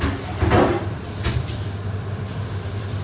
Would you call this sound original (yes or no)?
no